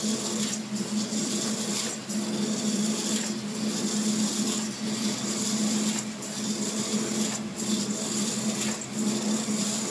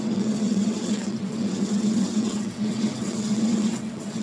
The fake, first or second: second